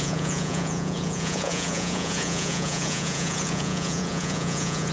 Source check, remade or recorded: remade